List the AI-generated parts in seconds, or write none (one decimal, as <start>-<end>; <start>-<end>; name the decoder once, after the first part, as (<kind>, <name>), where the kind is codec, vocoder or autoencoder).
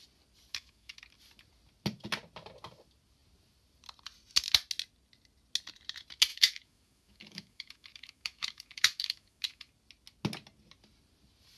0.5-1.0 (autoencoder, DAC-VAE); 6.3-9.7